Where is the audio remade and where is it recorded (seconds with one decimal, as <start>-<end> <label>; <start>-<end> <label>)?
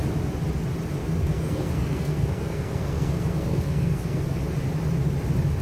0.0-1.0 recorded; 1.0-4.4 remade; 4.4-5.6 recorded